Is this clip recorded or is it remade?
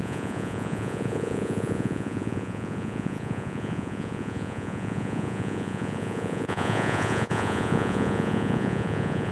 remade